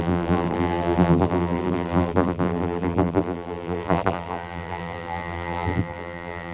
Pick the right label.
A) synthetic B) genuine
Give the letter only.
A